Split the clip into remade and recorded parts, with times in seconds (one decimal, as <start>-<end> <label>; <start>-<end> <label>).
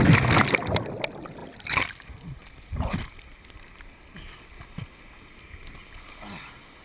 0.0-6.8 recorded